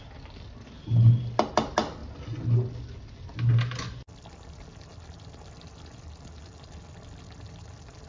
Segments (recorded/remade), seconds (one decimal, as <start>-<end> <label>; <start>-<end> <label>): 0.0-8.1 recorded